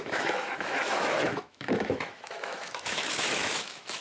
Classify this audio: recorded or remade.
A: remade